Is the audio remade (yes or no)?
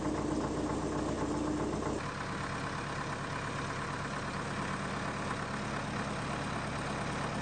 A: no